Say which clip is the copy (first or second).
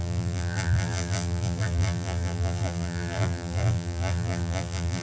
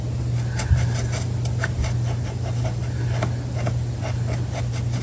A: first